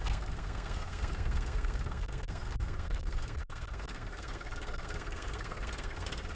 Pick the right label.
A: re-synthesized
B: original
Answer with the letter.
A